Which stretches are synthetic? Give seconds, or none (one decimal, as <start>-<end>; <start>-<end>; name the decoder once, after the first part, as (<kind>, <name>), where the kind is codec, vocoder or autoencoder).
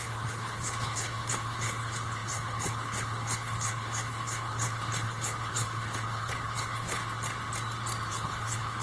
0.0-7.0 (codec, HILCodec); 8.1-8.8